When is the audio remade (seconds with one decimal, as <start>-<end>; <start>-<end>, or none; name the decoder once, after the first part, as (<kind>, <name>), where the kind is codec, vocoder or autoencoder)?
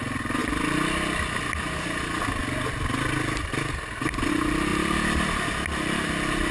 none